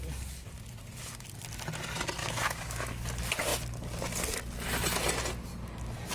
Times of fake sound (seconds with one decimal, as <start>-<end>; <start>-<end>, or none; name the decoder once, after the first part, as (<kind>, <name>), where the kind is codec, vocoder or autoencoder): 2.2-3.0 (autoencoder, DAC-VAE)